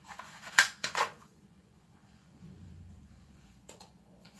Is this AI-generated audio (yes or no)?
yes